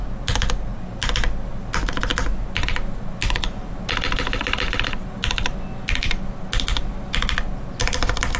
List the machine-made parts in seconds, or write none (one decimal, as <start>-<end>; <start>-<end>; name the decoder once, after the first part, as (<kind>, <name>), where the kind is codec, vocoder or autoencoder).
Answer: none